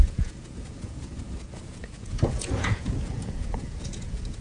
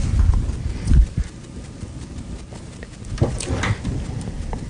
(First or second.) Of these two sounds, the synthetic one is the first